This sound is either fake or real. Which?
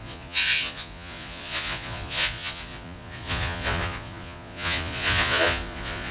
fake